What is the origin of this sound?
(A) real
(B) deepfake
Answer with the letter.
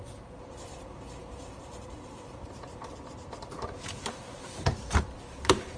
B